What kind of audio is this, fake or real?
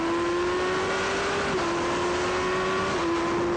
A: real